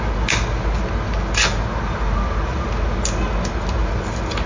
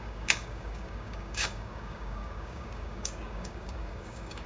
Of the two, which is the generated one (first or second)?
second